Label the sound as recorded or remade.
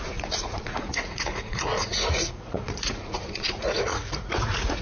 remade